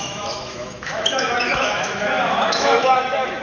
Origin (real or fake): fake